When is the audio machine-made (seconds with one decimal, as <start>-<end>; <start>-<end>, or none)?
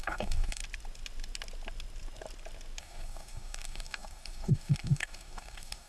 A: 0.0-0.6; 2.8-5.9